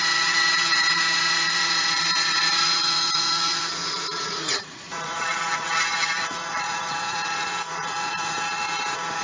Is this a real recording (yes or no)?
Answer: no